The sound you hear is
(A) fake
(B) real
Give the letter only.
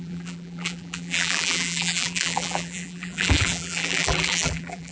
A